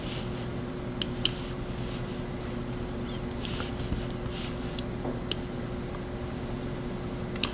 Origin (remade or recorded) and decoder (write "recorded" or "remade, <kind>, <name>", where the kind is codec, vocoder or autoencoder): recorded